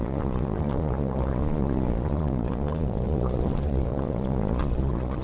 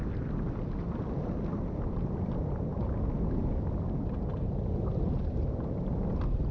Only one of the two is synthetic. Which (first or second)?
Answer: first